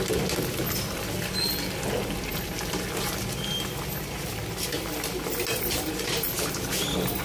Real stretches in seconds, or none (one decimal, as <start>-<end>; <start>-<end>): 0.0-7.2

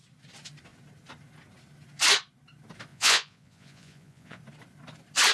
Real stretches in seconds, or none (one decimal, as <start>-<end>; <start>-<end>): 0.0-2.9; 4.4-5.3

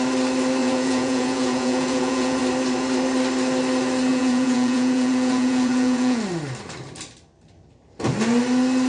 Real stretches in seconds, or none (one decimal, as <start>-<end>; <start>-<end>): 0.0-0.6; 2.4-4.1; 6.2-8.9

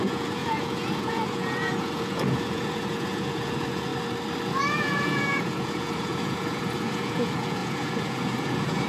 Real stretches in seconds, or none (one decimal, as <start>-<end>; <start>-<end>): 3.9-4.7

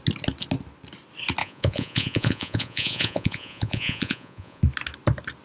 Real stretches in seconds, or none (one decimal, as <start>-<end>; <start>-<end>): 0.0-1.4; 4.6-5.4

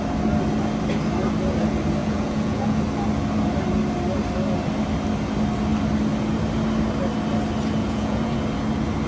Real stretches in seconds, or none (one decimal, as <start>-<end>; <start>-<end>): 0.0-2.0; 2.8-7.8; 8.4-9.1

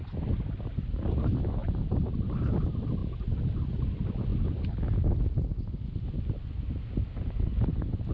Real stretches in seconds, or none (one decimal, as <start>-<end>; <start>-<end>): 0.0-1.6; 2.1-8.1

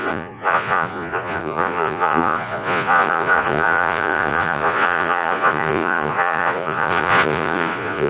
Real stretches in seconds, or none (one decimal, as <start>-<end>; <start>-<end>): none